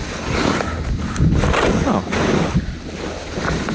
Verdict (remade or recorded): recorded